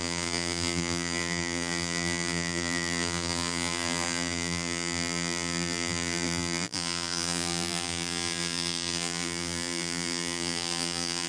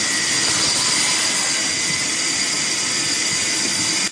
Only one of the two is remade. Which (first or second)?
first